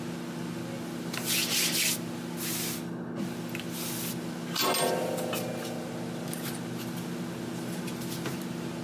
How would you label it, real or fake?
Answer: real